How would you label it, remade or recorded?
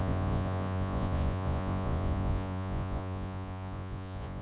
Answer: remade